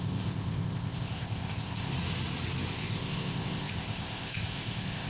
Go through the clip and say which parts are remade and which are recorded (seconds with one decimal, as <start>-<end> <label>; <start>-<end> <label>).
0.0-1.9 remade; 1.9-2.7 recorded; 2.7-5.1 remade